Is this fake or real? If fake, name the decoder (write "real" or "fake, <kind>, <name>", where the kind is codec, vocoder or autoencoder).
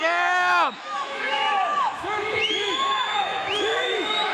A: fake, autoencoder, DAC-VAE